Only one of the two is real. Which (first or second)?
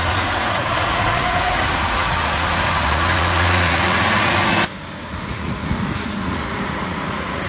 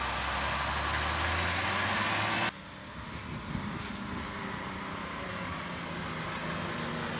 second